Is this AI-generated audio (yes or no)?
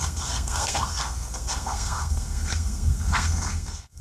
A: yes